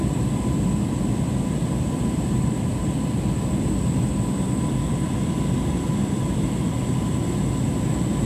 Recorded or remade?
recorded